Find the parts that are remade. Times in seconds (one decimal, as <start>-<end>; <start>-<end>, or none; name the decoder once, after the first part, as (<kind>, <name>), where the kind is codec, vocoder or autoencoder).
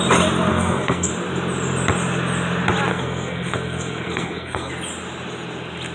0.5-1.1 (codec, SNAC); 2.9-4.7